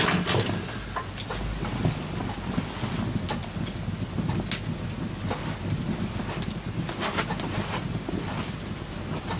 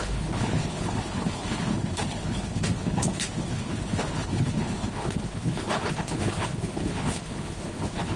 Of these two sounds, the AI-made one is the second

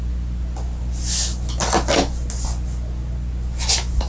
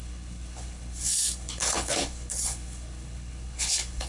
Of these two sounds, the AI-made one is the second